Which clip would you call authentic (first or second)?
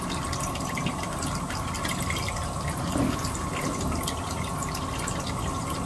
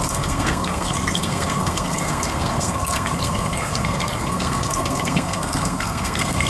first